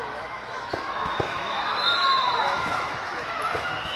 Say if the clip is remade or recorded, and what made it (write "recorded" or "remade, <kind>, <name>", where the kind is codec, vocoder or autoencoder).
remade, autoencoder, DAC-VAE